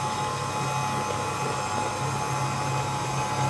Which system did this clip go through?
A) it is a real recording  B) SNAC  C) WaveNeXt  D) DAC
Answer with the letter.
A